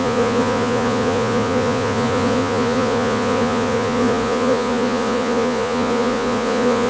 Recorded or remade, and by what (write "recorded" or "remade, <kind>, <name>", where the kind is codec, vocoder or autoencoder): remade, vocoder, Vocos